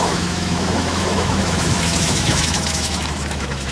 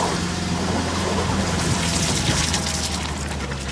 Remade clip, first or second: first